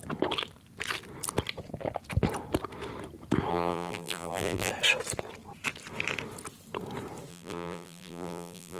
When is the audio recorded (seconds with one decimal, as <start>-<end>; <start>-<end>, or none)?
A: 0.0-3.5; 4.7-7.3